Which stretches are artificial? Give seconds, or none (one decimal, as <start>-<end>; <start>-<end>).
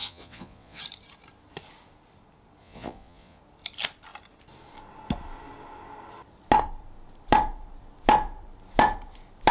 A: 0.0-0.8; 2.6-3.4